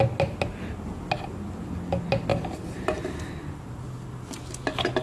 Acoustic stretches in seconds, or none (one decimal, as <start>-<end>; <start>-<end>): 0.0-5.0